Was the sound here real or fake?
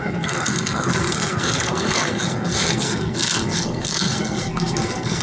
fake